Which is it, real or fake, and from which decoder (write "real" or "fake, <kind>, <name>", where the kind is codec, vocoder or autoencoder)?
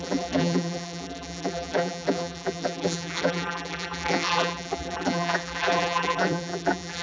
fake, vocoder, BigVGAN v2